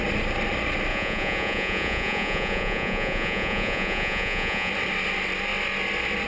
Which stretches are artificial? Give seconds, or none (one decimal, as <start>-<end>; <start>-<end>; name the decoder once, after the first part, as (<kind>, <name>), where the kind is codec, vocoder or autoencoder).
0.9-4.7 (vocoder, Vocos)